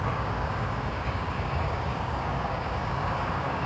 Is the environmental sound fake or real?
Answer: fake